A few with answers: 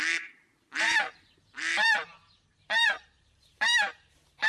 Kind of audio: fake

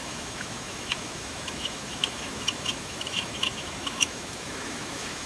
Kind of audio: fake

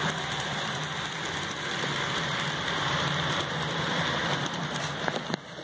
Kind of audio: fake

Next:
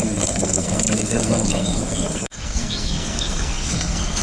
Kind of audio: fake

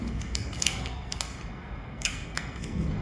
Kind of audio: fake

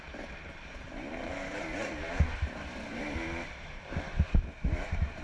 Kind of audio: fake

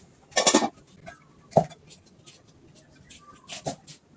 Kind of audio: real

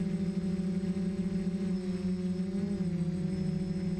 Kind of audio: real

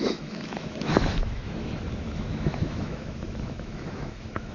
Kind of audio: fake